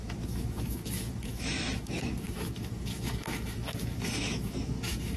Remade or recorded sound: remade